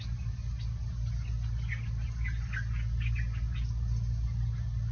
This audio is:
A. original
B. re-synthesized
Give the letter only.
A